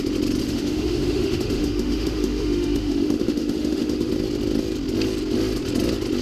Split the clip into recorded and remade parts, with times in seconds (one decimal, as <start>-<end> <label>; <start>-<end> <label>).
0.0-0.4 recorded; 0.4-4.1 remade; 4.1-6.2 recorded